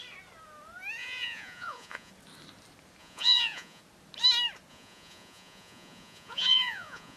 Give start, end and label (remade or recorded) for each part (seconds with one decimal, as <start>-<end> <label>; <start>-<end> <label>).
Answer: 0.0-1.0 recorded; 1.0-2.1 remade; 2.1-3.0 recorded; 3.0-3.8 remade; 3.8-4.7 recorded; 4.7-7.2 remade